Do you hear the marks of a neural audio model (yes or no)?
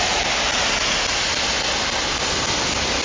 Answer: no